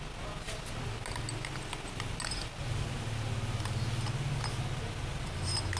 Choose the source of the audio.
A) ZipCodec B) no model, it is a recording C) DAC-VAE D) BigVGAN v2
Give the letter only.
B